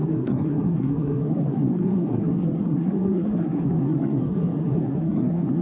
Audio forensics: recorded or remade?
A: remade